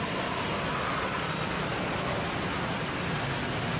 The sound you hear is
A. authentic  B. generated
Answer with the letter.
A